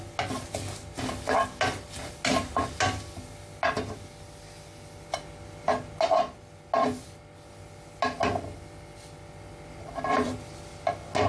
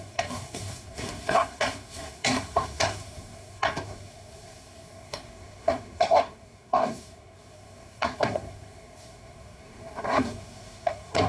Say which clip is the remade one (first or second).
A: second